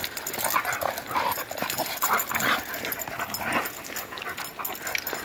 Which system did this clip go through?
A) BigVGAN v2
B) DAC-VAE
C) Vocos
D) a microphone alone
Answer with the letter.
D